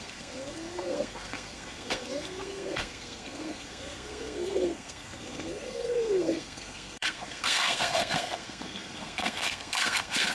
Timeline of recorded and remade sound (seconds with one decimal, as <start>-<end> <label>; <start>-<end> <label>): 0.0-10.3 remade

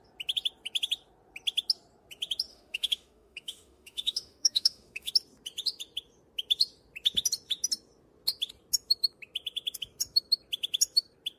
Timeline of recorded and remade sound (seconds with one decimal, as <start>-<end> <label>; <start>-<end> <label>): 0.0-2.5 recorded; 2.5-5.1 remade; 5.1-11.4 recorded